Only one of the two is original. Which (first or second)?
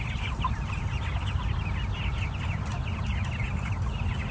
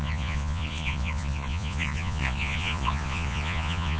first